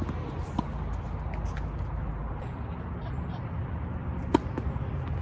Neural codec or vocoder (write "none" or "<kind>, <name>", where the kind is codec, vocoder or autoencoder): none